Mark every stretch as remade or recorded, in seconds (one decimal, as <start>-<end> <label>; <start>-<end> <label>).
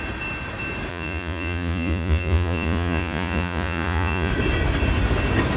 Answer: 0.0-0.9 recorded; 0.9-4.3 remade; 4.3-5.6 recorded